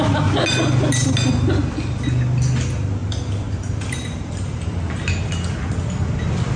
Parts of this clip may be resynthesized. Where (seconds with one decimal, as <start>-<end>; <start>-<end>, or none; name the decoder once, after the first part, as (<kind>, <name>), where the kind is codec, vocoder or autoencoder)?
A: 3.0-5.3 (vocoder, BigVGAN v2)